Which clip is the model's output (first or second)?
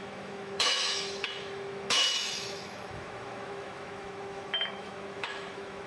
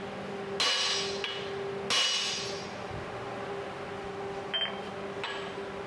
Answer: first